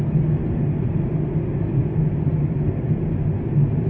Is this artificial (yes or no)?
no